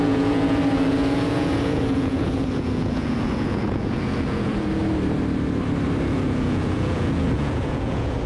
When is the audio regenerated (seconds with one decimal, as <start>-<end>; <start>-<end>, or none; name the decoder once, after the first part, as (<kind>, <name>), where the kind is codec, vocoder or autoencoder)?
0.0-4.8 (vocoder, Vocos); 6.1-8.3